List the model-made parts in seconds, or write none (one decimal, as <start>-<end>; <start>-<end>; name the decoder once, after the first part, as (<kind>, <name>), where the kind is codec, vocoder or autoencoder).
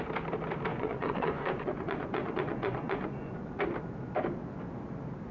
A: 0.7-3.6 (vocoder, Vocos)